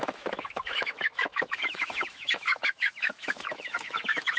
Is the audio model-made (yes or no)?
yes